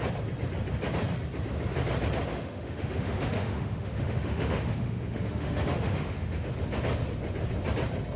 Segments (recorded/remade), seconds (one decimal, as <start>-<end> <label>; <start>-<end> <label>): 0.0-2.3 recorded; 2.3-6.5 remade; 6.5-8.2 recorded